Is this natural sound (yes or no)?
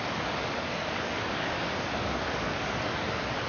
no